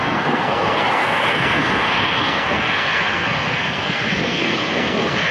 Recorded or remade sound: remade